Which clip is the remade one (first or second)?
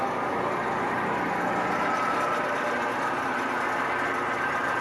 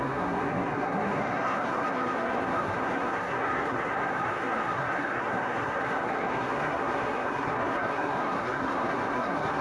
second